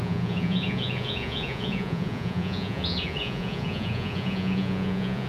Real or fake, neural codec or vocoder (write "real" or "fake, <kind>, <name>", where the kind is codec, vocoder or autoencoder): fake, vocoder, Vocos